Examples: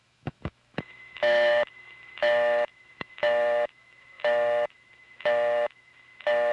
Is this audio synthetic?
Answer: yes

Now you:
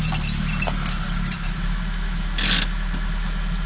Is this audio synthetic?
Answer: no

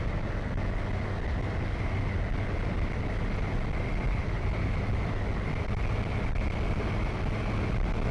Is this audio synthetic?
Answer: no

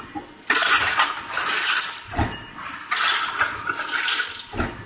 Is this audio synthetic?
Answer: no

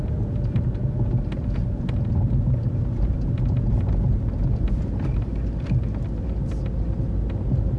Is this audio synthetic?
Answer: no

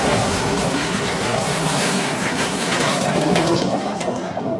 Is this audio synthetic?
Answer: yes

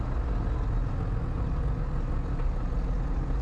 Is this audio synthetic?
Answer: no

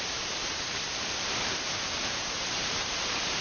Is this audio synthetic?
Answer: yes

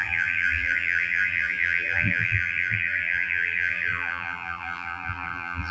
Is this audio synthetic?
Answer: yes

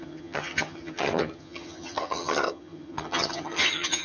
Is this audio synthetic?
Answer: yes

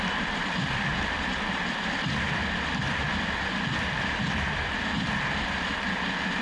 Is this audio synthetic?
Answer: yes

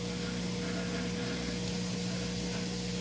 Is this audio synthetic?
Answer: no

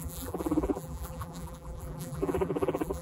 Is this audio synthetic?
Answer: yes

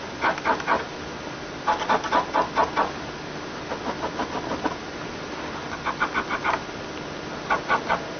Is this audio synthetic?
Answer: no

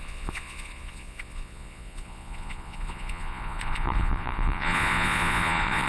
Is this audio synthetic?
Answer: yes